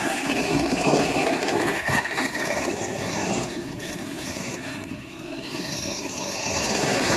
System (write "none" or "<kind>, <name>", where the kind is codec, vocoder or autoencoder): codec, SNAC